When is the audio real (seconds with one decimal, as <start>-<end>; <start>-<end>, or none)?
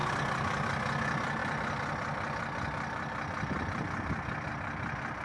0.0-5.2